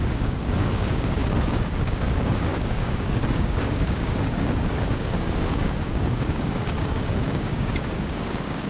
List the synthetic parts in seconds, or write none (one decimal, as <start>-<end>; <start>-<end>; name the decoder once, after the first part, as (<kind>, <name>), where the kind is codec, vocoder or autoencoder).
0.0-8.7 (codec, DAC)